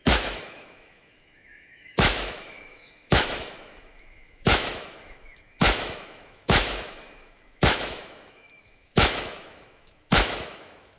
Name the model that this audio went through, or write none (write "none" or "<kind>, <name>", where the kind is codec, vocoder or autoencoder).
autoencoder, DAC-VAE